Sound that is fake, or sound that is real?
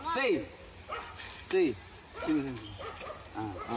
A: real